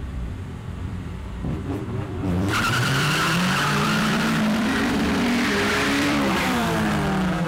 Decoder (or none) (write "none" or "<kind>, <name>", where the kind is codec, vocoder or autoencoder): vocoder, BigVGAN v2